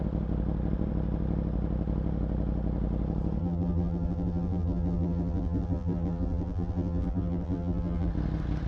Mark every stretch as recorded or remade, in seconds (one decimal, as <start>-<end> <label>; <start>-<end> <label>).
0.0-3.4 recorded; 3.4-8.1 remade; 8.1-8.7 recorded